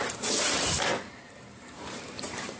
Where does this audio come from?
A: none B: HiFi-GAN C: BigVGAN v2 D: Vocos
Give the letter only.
C